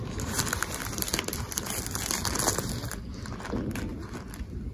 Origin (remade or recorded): recorded